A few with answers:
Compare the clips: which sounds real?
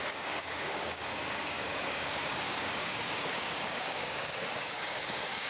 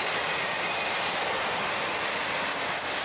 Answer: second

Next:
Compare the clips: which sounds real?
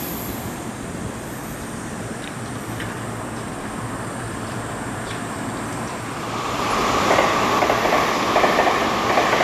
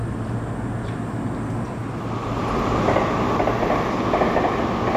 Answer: second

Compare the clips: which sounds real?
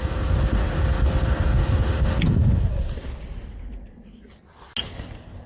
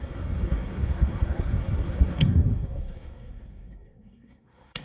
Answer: first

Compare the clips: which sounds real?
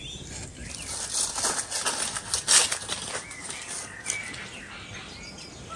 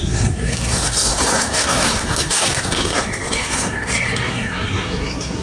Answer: first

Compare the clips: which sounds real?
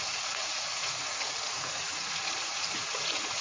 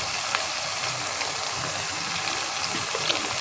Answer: second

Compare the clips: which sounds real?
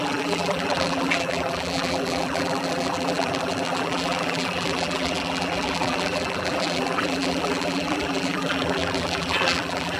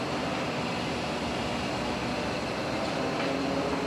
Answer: second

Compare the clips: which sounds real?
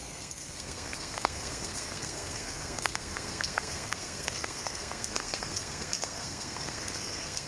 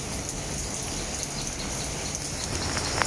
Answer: second